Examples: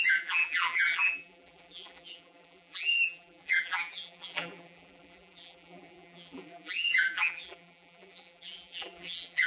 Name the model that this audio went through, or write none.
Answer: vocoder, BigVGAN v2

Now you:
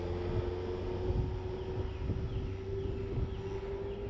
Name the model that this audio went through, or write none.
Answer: none